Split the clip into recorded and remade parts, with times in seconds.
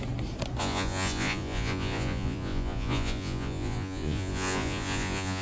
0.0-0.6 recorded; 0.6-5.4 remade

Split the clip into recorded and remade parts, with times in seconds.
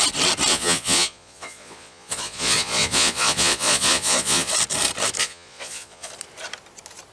0.0-0.5 recorded; 0.5-4.5 remade; 4.5-5.2 recorded; 5.2-6.1 remade; 6.1-7.1 recorded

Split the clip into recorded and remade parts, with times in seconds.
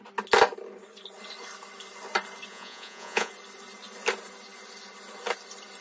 0.0-2.5 recorded; 2.5-3.3 remade; 3.3-5.8 recorded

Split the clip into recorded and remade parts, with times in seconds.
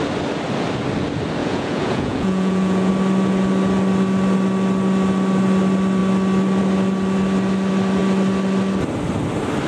0.0-1.4 recorded; 1.4-2.9 remade; 2.9-9.7 recorded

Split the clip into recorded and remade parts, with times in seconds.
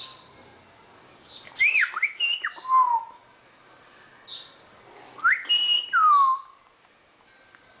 0.0-7.8 recorded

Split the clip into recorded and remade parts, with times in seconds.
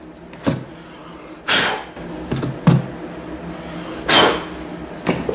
0.0-5.3 recorded